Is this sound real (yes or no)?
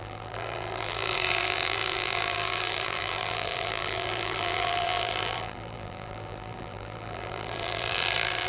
no